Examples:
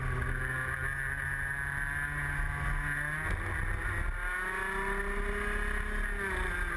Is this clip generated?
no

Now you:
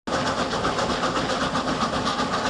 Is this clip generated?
no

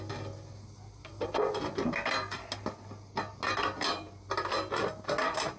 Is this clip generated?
no